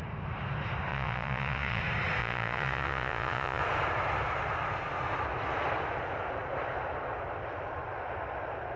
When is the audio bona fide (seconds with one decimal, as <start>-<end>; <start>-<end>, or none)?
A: 0.0-0.9; 1.8-2.2; 3.6-8.8